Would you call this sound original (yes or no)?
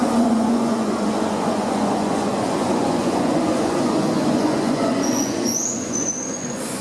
no